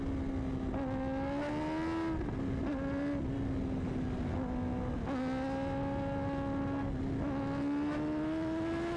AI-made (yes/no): no